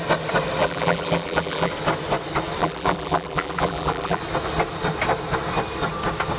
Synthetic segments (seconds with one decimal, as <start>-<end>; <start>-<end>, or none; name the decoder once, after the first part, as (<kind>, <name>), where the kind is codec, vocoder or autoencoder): 0.6-1.7 (vocoder, BigVGAN v2); 2.6-4.2